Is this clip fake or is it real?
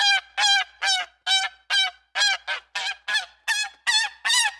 real